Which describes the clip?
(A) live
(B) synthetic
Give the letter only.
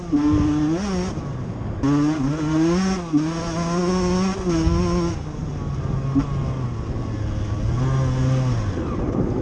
A